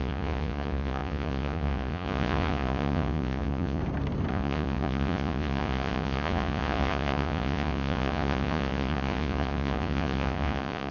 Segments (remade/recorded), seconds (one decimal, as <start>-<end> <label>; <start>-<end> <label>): 0.0-3.8 remade; 3.8-4.3 recorded; 4.3-10.9 remade